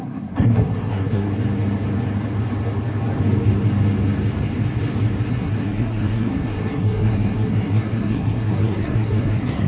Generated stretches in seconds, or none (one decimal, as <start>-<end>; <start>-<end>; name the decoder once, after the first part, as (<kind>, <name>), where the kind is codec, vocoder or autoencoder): 0.0-1.3 (codec, SNAC); 5.3-9.7